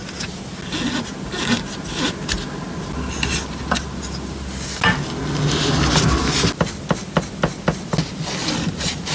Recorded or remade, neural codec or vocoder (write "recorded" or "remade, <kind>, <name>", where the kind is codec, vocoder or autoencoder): recorded